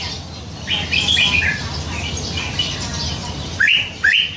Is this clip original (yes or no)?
yes